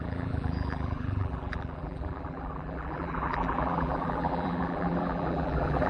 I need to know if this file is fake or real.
fake